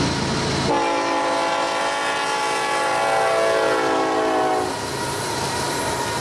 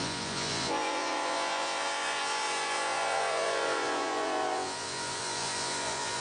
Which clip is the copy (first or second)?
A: second